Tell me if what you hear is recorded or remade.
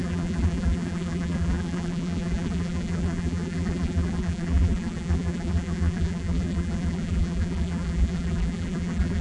remade